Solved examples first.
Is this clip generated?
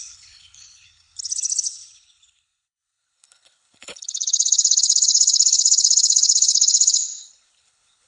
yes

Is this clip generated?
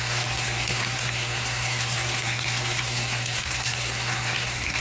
yes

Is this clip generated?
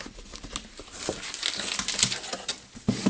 no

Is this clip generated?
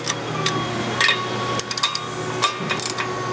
no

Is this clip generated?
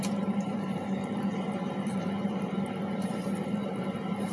yes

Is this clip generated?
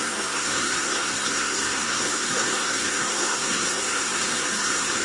yes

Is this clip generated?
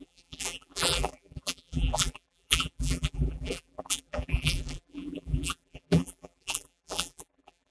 yes